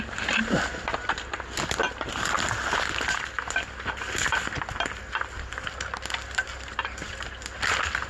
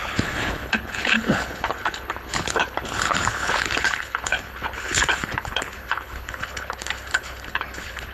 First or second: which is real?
first